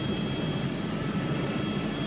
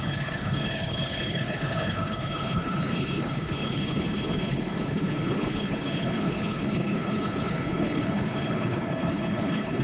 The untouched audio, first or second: first